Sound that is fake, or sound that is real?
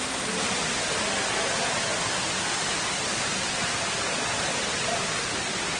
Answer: real